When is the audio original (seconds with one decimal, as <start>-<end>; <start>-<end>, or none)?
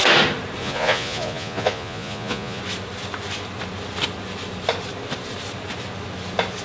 0.0-0.6; 2.6-6.6